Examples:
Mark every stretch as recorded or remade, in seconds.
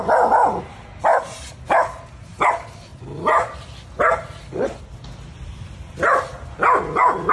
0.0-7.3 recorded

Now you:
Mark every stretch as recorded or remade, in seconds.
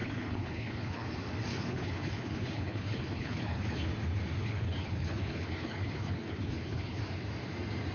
0.0-1.1 remade; 1.1-1.5 recorded; 1.5-3.9 remade; 3.9-4.4 recorded; 4.4-7.0 remade; 7.0-7.9 recorded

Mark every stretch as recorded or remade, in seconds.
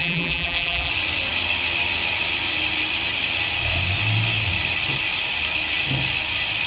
0.0-0.9 remade; 0.9-6.7 recorded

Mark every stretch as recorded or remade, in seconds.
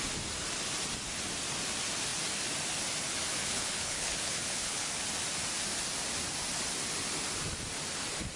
0.0-3.4 recorded; 3.4-4.9 remade; 4.9-8.4 recorded